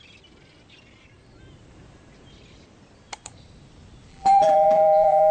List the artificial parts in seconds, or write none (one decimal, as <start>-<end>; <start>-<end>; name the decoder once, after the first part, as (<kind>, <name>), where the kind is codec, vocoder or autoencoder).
4.1-5.3 (vocoder, BigVGAN v2)